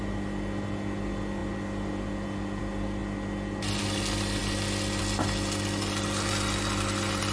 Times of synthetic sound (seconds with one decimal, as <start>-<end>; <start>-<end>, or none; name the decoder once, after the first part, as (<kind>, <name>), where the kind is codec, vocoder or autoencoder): none